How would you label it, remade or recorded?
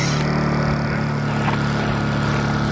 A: recorded